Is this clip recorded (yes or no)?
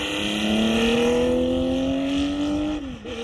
yes